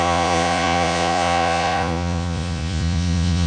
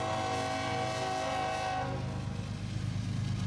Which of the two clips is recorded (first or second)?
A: second